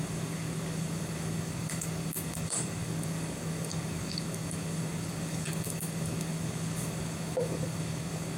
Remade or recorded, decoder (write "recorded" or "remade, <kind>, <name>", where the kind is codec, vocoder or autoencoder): remade, codec, DAC